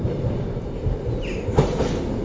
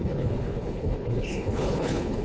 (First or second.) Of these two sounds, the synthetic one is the second